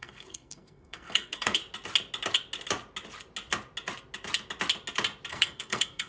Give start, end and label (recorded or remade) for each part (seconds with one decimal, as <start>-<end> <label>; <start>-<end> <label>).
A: 0.0-1.6 remade; 1.6-5.3 recorded; 5.3-6.1 remade

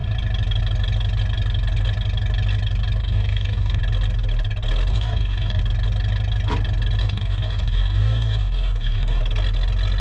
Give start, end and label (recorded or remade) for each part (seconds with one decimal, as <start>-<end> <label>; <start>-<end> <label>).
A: 0.0-3.0 recorded; 3.0-3.8 remade; 3.8-4.9 recorded; 4.9-5.6 remade; 5.6-7.0 recorded; 7.0-9.2 remade; 9.2-10.0 recorded

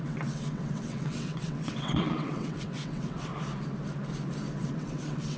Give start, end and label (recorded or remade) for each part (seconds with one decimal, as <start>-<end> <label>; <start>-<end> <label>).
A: 0.0-3.3 remade; 3.3-4.6 recorded; 4.6-5.4 remade

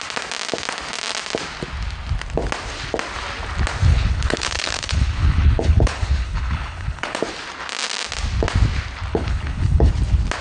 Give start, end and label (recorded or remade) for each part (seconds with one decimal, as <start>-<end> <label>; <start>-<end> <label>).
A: 0.0-3.9 recorded; 3.9-7.2 remade; 7.2-9.1 recorded; 9.1-9.9 remade; 9.9-10.4 recorded